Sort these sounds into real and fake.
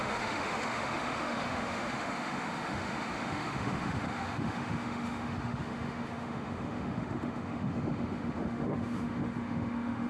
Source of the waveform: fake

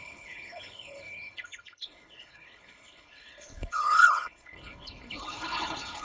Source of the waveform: fake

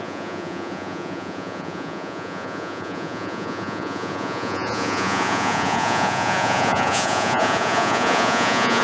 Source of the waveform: fake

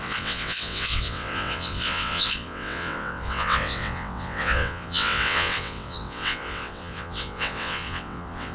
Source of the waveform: fake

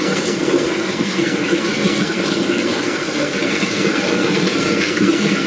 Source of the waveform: fake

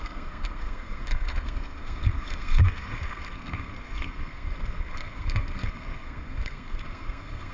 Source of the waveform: fake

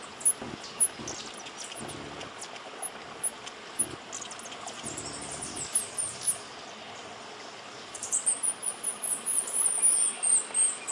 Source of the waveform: real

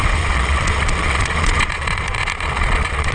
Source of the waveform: fake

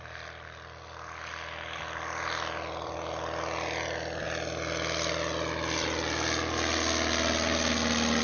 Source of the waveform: real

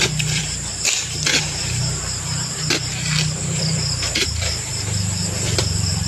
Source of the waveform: fake